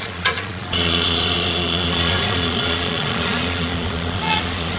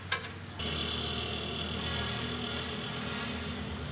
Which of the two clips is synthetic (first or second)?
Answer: first